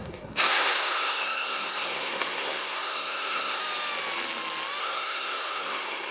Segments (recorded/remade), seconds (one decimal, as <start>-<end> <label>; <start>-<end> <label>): 0.0-3.6 remade; 3.6-4.8 recorded; 4.8-6.1 remade